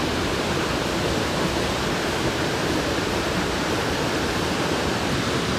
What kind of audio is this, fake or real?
real